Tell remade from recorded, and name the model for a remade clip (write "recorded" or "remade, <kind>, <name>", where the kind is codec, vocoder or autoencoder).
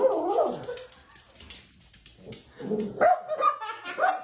recorded